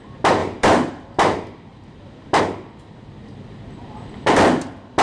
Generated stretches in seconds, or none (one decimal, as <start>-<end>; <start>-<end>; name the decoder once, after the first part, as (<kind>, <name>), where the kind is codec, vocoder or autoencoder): 0.4-2.4 (vocoder, BigVGAN v2)